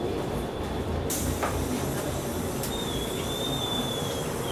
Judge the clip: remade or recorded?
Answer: remade